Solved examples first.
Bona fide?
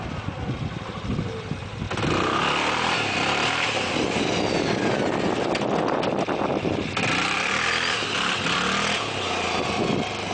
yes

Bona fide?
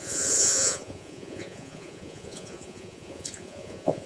no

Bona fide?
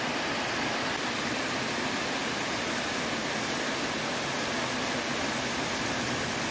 yes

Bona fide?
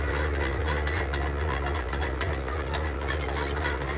no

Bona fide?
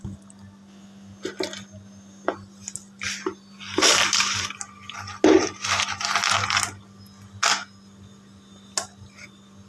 yes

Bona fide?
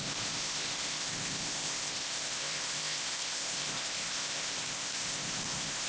no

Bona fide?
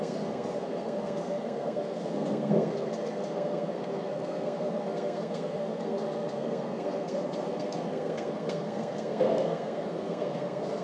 no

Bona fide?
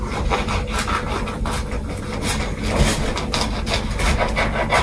yes